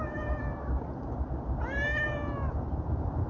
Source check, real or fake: real